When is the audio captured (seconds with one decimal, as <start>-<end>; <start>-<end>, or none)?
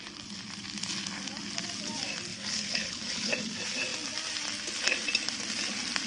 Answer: 0.0-2.3; 3.3-6.1